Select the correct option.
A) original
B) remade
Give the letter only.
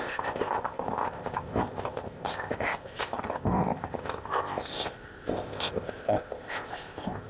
B